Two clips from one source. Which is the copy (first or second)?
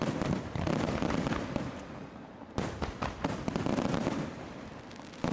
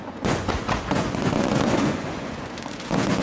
second